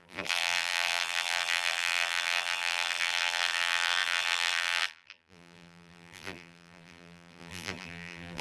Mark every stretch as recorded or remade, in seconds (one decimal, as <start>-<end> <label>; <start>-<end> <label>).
0.0-8.4 remade